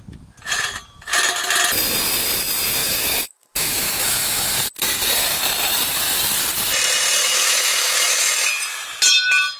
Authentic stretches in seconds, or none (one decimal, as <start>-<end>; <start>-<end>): 0.0-2.8; 4.5-7.2; 8.3-9.6

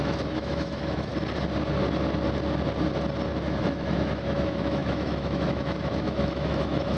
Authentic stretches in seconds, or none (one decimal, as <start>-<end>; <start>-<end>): 1.1-3.6

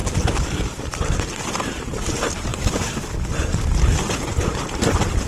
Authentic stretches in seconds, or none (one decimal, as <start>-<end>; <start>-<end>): 0.0-2.5; 3.3-5.3

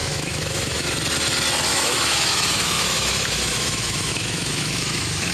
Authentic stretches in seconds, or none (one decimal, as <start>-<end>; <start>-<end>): 0.9-1.7

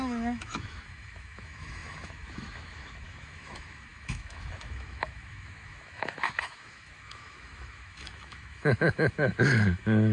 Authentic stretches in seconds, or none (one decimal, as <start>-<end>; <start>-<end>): none